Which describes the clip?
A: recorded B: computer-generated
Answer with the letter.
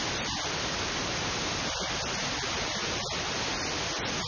B